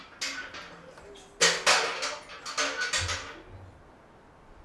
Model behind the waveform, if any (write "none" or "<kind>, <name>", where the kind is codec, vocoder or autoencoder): none